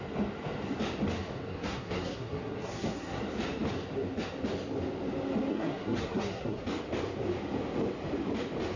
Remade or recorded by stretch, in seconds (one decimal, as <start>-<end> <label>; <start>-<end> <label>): 0.0-1.5 recorded; 1.5-3.2 remade; 3.2-5.5 recorded; 5.5-6.6 remade; 6.6-8.8 recorded